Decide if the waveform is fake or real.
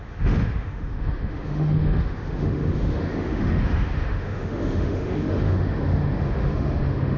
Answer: fake